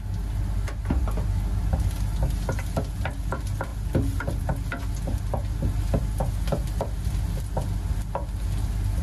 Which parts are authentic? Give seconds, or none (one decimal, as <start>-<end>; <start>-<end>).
0.0-9.0